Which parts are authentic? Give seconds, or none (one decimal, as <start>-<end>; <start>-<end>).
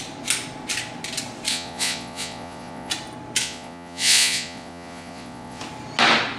0.0-1.5; 2.9-3.4; 5.6-6.4